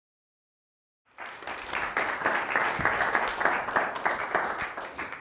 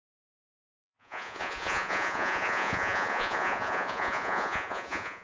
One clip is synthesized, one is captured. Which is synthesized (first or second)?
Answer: second